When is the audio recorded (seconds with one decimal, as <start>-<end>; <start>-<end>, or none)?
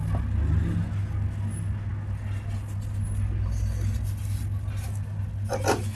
0.0-6.0